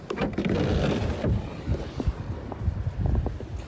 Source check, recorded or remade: recorded